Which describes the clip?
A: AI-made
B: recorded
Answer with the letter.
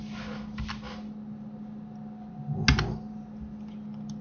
B